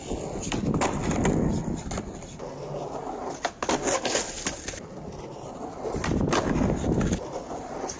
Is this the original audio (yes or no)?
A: yes